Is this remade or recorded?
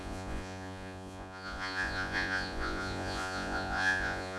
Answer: remade